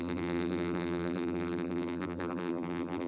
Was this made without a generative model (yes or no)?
no